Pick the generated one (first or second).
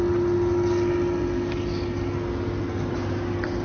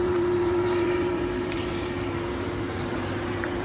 second